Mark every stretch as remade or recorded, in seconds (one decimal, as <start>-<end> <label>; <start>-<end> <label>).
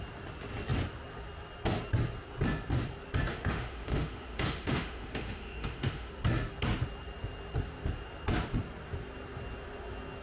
0.0-3.3 recorded; 3.3-6.1 remade; 6.1-10.2 recorded